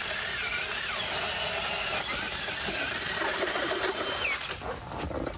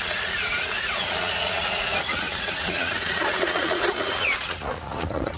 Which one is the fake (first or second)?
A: second